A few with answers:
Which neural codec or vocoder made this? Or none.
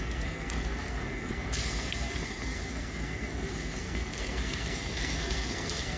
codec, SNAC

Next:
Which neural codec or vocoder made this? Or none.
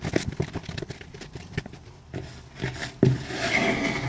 none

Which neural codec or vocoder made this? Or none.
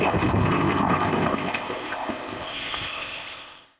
codec, ZipCodec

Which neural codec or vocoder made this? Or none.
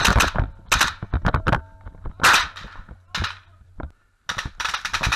none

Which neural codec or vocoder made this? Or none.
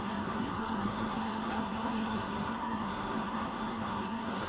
codec, SNAC